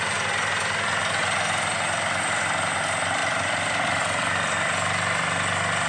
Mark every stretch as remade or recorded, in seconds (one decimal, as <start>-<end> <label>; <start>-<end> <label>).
0.0-3.2 recorded; 3.2-4.0 remade; 4.0-5.9 recorded